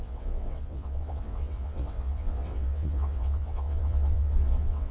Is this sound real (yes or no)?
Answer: no